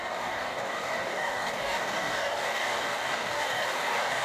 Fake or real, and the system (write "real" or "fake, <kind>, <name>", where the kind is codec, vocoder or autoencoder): fake, codec, DAC